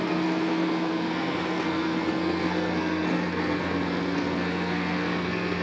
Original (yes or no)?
no